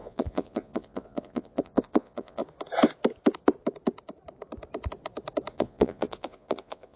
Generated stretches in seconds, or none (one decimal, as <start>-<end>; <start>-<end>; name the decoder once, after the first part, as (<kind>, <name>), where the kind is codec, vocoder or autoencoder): 0.0-2.4 (vocoder, Vocos); 5.5-7.0

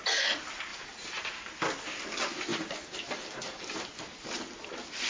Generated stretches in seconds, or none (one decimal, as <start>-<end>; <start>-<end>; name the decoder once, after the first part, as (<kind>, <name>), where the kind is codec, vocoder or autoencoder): 0.7-1.5 (vocoder, BigVGAN v2); 2.5-4.2

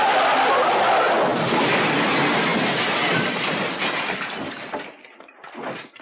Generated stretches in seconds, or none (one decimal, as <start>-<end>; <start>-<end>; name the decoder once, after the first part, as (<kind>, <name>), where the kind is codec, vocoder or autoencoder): none

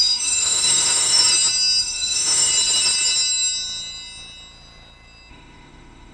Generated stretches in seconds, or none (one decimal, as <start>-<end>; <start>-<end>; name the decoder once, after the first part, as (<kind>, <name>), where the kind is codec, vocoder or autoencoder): 0.0-1.2 (autoencoder, DAC-VAE); 1.8-2.5; 5.3-6.1

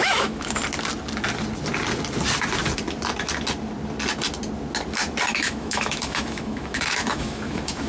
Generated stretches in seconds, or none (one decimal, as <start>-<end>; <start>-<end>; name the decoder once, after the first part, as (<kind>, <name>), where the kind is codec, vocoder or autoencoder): 0.0-0.6 (autoencoder, DAC-VAE); 5.3-7.9

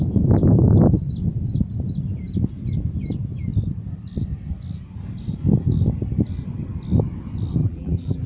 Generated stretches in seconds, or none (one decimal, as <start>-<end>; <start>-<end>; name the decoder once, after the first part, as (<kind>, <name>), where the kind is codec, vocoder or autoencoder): 7.6-8.3 (vocoder, BigVGAN v2)